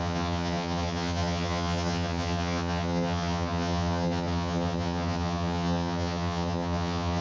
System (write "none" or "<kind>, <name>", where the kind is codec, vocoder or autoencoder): vocoder, HiFi-GAN